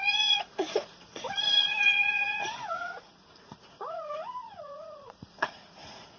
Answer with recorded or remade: remade